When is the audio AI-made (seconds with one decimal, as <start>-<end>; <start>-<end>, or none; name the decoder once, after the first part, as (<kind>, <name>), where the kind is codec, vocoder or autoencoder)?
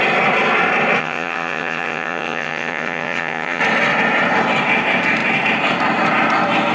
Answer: 1.0-3.6 (vocoder, HiFi-GAN)